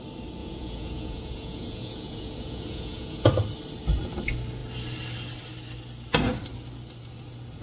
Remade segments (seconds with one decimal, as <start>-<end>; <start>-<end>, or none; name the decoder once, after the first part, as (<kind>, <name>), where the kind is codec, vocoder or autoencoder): 0.4-3.3 (vocoder, Vocos)